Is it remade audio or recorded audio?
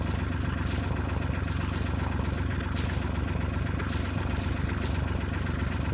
recorded